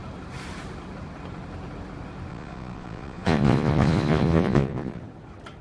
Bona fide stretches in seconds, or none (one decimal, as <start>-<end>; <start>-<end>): 0.0-2.3; 5.0-5.6